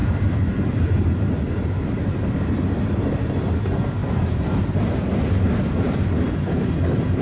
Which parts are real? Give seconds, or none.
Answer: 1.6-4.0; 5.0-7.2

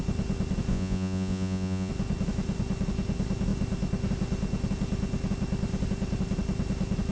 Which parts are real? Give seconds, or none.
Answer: 0.0-0.7; 1.9-7.1

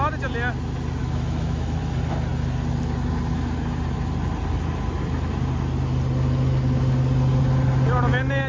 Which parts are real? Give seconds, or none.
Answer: 0.0-1.0; 1.8-8.5

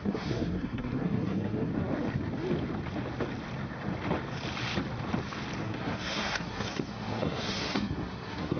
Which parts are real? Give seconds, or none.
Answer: 1.7-5.6